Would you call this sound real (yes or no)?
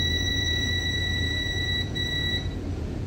no